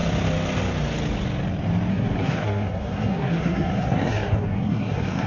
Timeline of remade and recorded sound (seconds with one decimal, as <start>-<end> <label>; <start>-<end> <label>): 0.0-1.9 recorded; 1.9-5.3 remade